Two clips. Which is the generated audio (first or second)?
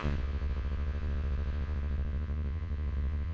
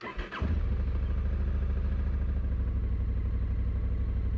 first